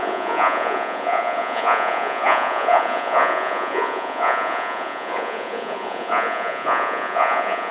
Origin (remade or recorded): remade